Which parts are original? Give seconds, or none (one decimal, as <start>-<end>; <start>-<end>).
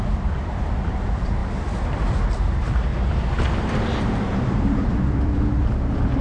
1.4-2.3; 2.9-3.6